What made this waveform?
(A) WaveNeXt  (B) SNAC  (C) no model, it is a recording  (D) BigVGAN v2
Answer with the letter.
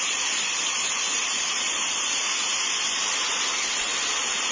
C